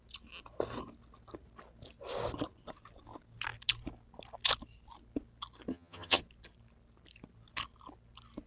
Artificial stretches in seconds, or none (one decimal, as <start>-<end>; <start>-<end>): 5.7-6.2

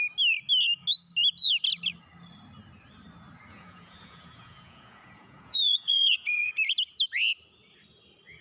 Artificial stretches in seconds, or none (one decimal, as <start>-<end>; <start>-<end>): 3.5-6.5

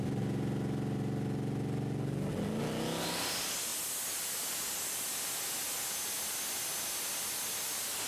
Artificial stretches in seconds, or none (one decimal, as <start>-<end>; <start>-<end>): none

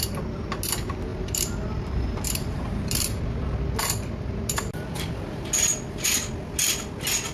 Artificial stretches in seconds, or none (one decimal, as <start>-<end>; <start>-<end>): 1.1-3.2